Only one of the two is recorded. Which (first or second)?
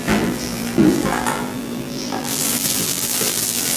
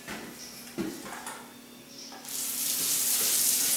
second